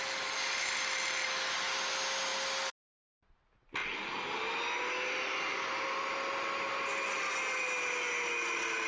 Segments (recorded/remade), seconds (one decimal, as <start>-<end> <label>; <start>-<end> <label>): 0.0-8.9 recorded